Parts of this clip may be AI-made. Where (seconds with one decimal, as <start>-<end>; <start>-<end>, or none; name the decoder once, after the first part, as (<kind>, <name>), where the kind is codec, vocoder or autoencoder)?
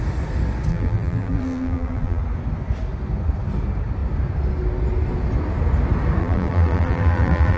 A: 0.7-2.2 (vocoder, BigVGAN v2); 6.2-7.6